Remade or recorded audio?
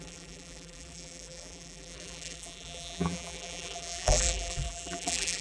remade